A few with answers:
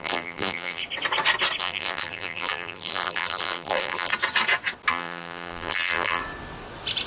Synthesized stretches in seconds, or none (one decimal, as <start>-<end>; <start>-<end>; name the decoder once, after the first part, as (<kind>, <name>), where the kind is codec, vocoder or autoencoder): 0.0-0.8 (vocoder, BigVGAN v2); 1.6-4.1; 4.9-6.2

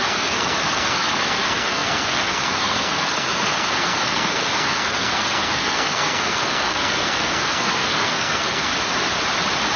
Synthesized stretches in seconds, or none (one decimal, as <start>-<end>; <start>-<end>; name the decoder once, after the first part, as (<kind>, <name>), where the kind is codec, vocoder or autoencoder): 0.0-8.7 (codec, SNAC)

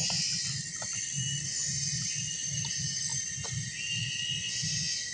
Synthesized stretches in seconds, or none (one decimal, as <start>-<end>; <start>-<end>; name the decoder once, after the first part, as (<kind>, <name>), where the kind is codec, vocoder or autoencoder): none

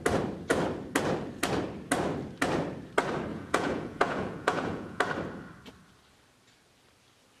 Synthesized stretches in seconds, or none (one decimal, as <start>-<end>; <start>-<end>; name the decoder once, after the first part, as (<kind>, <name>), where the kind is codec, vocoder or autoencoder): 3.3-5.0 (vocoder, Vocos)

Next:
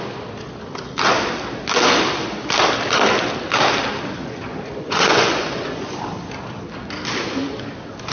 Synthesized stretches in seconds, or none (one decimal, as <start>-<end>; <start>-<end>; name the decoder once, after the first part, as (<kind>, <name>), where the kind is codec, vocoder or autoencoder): 4.2-5.9 (vocoder, Vocos)

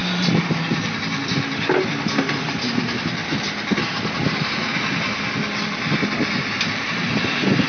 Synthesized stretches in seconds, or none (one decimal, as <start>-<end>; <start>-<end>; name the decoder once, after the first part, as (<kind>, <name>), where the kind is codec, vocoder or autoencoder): 0.0-3.2 (vocoder, BigVGAN v2); 3.9-4.7; 6.4-7.7

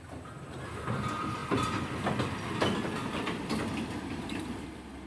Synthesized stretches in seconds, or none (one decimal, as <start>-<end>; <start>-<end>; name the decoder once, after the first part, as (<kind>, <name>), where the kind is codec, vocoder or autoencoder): 0.0-1.4 (vocoder, BigVGAN v2); 3.0-5.1

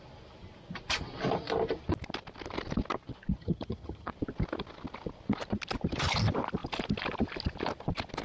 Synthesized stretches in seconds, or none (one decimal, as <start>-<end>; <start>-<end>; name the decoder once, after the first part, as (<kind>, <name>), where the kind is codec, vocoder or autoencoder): 3.4-4.1 (vocoder, HiFi-GAN)